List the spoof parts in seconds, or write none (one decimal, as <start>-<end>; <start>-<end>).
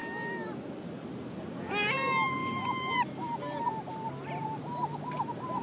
none